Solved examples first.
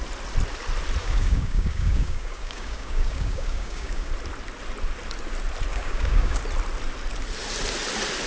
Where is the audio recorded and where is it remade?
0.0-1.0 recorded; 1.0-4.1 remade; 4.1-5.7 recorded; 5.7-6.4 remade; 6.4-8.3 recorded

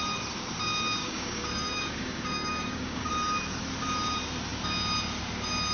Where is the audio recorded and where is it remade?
0.0-1.0 recorded; 1.0-3.1 remade; 3.1-5.7 recorded

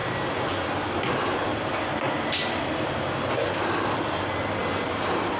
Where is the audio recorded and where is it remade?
0.0-5.4 recorded

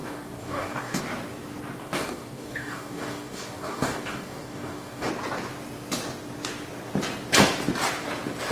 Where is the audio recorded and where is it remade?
0.0-1.0 remade; 1.0-1.8 recorded; 1.8-5.1 remade; 5.1-8.5 recorded

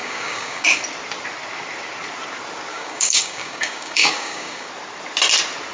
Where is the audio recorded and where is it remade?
0.0-0.8 remade; 0.8-2.7 recorded; 2.7-4.7 remade; 4.7-5.7 recorded

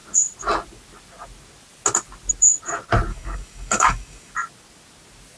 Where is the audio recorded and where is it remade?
0.0-3.1 recorded; 3.1-4.3 remade; 4.3-5.4 recorded

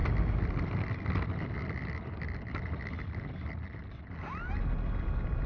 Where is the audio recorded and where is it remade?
0.0-5.5 recorded